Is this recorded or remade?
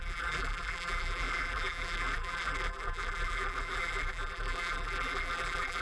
remade